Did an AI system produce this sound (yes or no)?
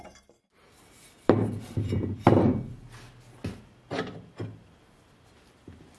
no